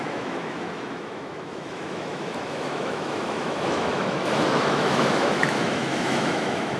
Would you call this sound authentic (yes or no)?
no